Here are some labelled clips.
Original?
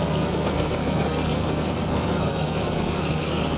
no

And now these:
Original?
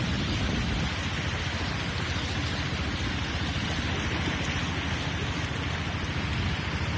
yes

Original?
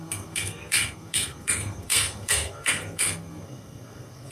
no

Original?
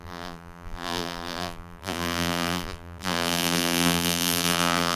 no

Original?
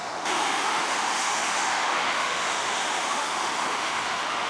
no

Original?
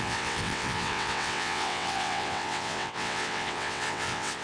no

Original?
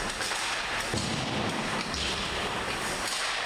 yes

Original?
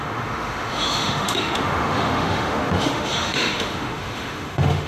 no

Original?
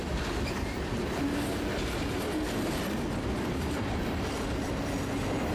yes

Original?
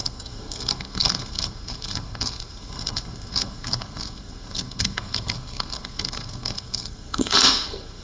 no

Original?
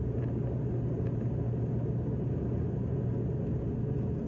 yes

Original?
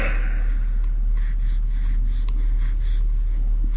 yes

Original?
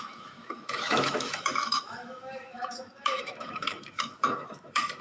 no